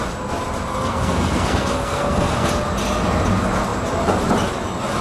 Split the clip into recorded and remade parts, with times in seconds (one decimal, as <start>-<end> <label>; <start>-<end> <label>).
0.0-0.7 recorded; 0.7-2.5 remade; 2.5-5.0 recorded